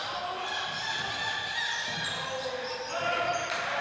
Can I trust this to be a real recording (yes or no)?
yes